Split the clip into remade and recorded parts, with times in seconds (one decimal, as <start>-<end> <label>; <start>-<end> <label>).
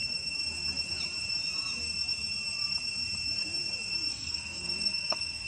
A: 0.0-4.1 recorded; 4.1-5.5 remade